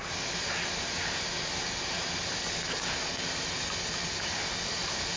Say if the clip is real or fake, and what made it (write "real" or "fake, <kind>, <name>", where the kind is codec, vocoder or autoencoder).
real